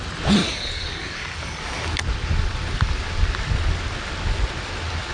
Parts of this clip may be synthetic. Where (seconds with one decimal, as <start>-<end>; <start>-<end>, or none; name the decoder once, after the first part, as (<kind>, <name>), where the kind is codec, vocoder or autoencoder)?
0.4-1.6 (codec, DAC)